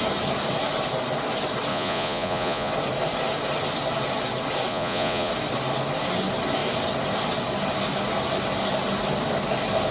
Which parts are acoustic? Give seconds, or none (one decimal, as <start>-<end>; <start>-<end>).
0.0-1.7; 2.7-4.7; 5.3-9.9